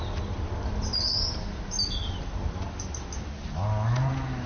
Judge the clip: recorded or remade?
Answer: recorded